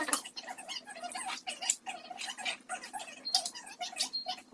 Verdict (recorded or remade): recorded